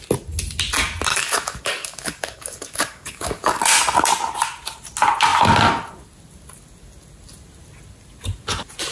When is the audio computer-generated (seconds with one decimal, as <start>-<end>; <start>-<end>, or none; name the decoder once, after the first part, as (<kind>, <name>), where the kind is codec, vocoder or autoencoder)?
1.1-3.6 (codec, DAC)